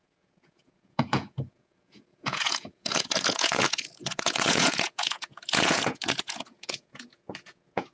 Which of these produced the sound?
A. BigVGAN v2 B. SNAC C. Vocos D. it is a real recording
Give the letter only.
C